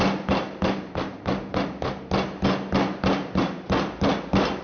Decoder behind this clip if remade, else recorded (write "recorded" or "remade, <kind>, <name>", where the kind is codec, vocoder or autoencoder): recorded